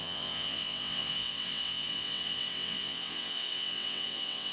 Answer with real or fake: fake